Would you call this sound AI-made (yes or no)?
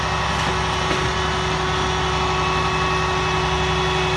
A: no